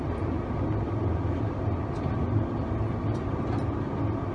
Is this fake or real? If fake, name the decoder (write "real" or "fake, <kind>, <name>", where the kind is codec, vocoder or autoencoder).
real